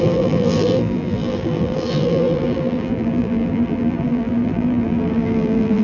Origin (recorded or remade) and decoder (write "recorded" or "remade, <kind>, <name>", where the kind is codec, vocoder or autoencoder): remade, vocoder, BigVGAN v2